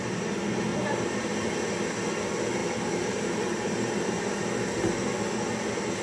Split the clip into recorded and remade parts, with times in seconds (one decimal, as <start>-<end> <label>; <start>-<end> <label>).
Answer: 0.0-0.7 recorded; 0.7-1.6 remade; 1.6-2.6 recorded; 2.6-4.5 remade; 4.5-6.0 recorded